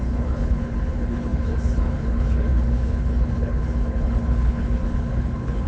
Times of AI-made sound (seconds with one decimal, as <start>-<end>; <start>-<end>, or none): 0.0-5.7